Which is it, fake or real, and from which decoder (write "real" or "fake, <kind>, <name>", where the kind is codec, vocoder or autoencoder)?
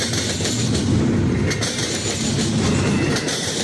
real